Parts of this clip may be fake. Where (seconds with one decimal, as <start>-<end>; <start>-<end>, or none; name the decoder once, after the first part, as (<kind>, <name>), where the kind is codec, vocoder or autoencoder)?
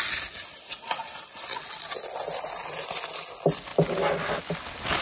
none